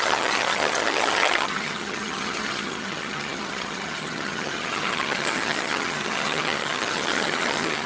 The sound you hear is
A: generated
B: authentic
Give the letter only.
A